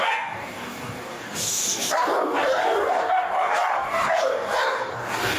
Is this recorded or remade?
remade